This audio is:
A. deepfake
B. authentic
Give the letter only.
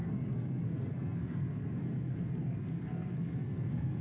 A